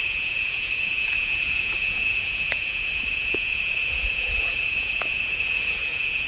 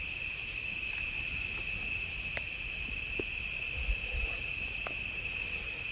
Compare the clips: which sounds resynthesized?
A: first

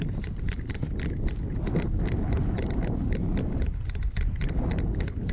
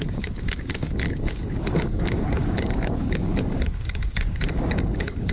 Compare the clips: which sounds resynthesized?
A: second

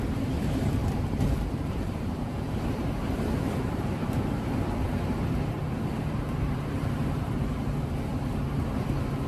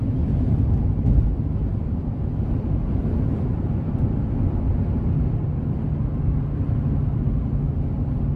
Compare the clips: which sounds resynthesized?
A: first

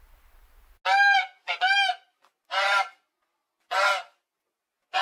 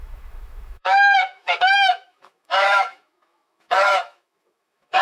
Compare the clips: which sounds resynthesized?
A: second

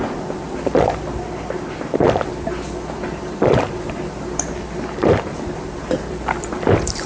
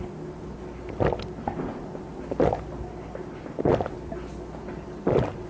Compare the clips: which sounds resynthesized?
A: first